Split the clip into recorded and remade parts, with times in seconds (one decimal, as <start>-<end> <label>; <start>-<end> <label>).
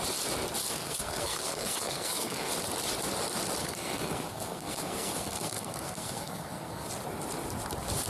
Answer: 0.0-0.6 recorded; 0.6-2.5 remade; 2.5-3.6 recorded; 3.6-6.9 remade; 6.9-8.1 recorded